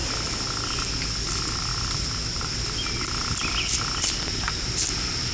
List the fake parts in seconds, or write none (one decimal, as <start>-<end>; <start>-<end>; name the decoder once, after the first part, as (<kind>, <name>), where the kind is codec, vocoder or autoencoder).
none